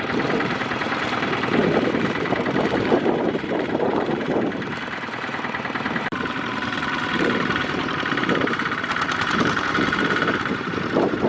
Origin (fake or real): fake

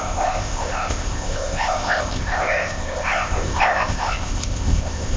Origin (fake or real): fake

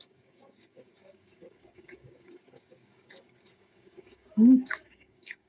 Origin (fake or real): fake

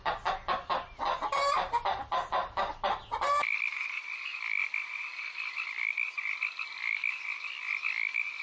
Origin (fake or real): real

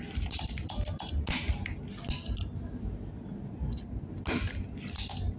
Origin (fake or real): real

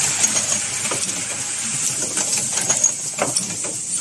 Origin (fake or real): real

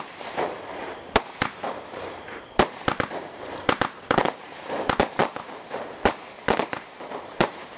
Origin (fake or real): fake